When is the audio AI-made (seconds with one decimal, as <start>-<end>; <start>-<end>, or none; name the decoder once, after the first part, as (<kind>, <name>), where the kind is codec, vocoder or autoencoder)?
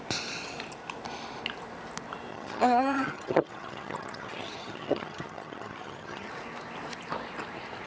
2.3-6.3 (vocoder, HiFi-GAN)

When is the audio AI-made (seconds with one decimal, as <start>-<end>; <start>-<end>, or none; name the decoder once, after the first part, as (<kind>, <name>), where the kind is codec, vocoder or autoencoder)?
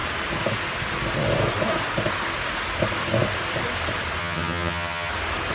4.2-5.1 (vocoder, HiFi-GAN)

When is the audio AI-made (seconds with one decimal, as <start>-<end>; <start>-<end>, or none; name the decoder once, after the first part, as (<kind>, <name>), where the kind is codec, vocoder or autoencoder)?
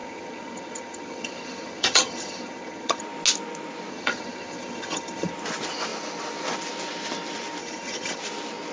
0.0-3.0 (vocoder, HiFi-GAN); 3.9-5.3; 7.6-8.2